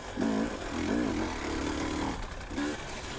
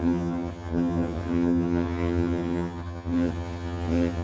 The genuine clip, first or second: first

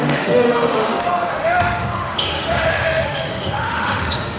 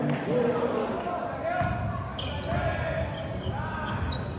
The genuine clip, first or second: second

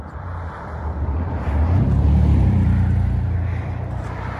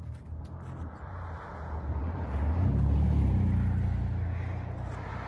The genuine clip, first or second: second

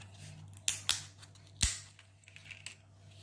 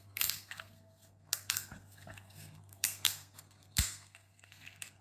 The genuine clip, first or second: first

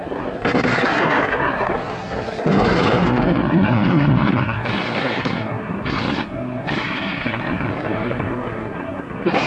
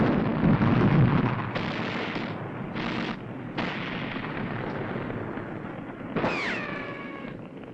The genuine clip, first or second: second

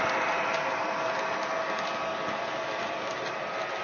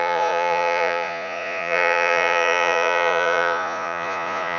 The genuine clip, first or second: first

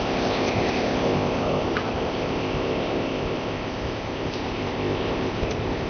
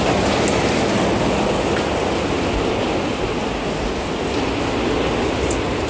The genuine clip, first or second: second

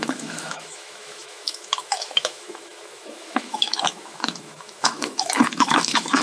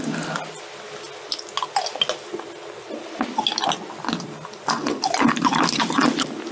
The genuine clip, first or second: second